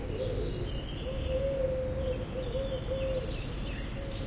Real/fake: real